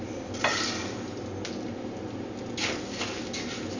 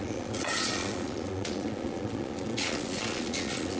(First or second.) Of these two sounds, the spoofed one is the second